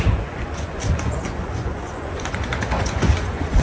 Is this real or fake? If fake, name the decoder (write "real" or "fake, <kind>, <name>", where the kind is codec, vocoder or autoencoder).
fake, vocoder, Vocos